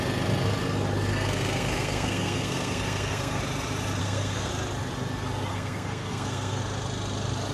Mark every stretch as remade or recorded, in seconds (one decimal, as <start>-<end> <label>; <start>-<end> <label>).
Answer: 0.0-1.1 recorded; 1.1-3.4 remade; 3.4-4.0 recorded; 4.0-4.5 remade; 4.5-5.5 recorded; 5.5-6.6 remade; 6.6-7.5 recorded